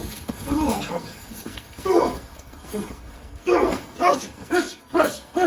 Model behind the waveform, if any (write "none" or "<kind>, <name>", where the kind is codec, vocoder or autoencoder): codec, SNAC